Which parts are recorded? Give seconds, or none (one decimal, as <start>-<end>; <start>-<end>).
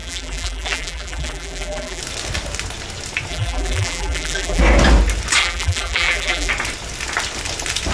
2.0-3.3; 4.6-5.4; 6.5-7.9